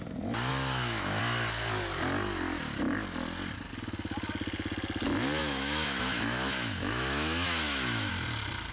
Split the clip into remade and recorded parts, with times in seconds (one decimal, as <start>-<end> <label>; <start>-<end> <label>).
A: 0.0-0.5 recorded; 0.5-1.2 remade; 1.2-5.4 recorded; 5.4-8.1 remade; 8.1-8.7 recorded